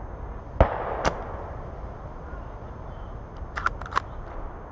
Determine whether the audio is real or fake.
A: real